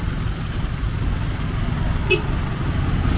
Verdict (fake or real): real